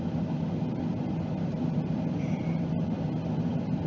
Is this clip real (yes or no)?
yes